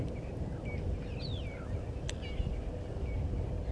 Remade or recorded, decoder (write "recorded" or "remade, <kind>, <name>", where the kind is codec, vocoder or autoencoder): recorded